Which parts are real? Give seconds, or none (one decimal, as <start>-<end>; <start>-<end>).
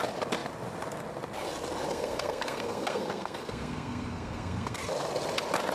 0.0-1.9; 4.8-5.7